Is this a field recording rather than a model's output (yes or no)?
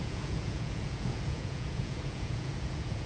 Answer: no